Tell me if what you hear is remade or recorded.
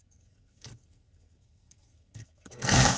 remade